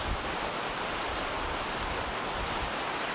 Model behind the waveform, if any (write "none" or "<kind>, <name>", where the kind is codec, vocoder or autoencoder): none